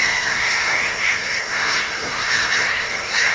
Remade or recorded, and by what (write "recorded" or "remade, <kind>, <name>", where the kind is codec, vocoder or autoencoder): remade, codec, SNAC